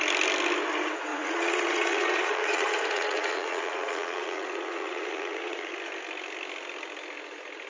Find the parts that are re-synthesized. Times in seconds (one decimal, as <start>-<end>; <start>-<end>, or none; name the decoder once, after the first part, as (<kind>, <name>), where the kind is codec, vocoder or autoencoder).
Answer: 1.1-5.7 (vocoder, Vocos)